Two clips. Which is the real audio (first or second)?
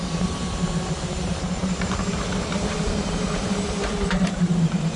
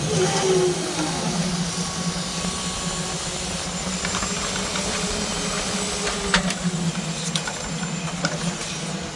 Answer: second